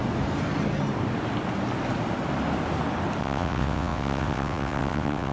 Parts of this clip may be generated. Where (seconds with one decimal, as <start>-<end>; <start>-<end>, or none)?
3.2-5.3